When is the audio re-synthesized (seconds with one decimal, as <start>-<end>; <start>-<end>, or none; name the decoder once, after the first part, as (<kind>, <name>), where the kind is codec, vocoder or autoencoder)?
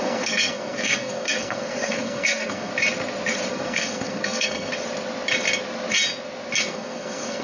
0.0-2.7 (codec, SNAC); 3.5-4.7; 6.6-7.4